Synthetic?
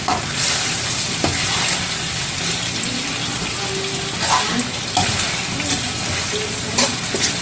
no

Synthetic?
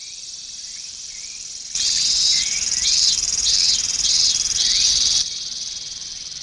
yes